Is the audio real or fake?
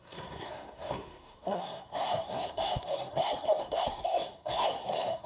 fake